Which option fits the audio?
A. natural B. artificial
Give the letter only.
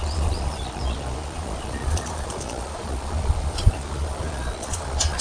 B